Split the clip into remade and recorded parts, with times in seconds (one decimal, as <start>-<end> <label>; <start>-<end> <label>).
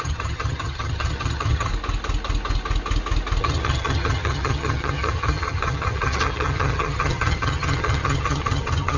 0.0-1.7 remade; 1.7-3.4 recorded; 3.4-9.0 remade